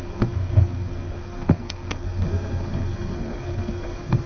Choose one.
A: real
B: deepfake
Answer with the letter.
B